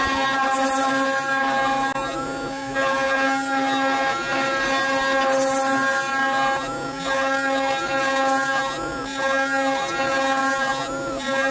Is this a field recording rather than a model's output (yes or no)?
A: yes